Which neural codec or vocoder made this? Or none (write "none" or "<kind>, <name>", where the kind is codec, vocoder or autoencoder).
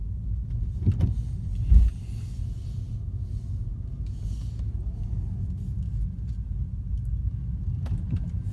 none